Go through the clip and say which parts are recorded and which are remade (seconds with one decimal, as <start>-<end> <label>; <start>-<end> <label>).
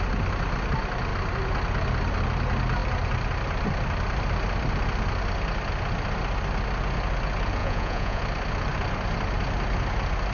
0.0-7.6 recorded; 7.6-8.2 remade; 8.2-10.3 recorded